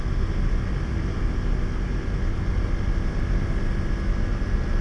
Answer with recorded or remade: recorded